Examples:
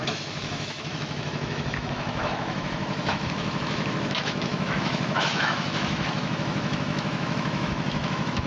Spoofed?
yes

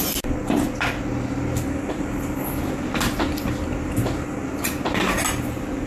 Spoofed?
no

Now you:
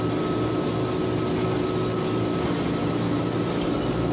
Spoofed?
no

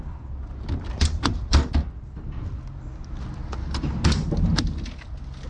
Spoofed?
no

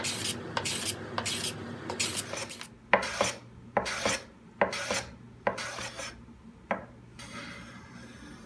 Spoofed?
no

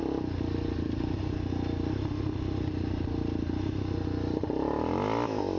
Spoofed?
no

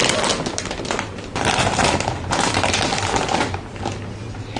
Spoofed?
no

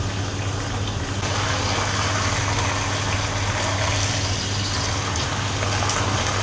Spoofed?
no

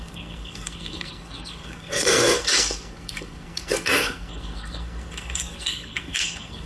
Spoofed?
yes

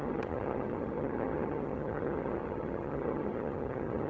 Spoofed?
yes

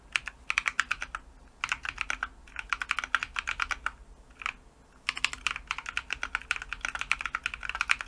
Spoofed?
no